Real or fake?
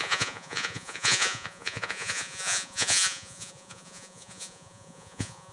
fake